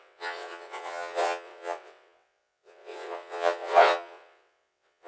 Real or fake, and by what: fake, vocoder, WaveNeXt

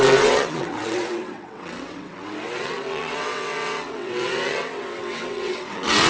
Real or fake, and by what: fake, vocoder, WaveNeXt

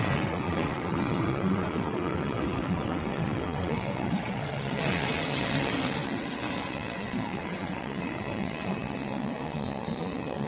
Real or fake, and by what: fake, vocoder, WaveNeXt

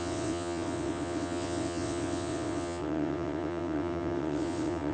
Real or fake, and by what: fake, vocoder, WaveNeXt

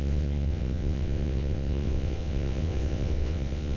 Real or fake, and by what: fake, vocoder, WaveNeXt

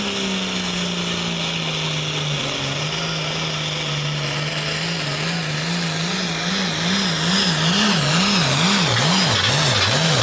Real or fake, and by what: real